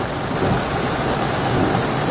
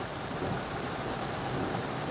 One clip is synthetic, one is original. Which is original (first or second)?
first